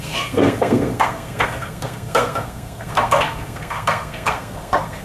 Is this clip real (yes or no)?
no